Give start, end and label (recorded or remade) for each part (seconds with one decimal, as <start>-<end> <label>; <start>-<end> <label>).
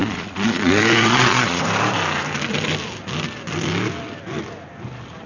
0.0-1.6 remade; 1.6-5.3 recorded